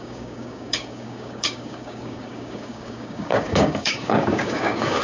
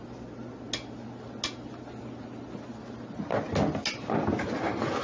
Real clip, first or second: second